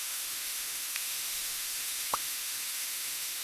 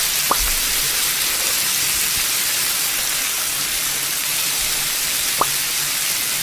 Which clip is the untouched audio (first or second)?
second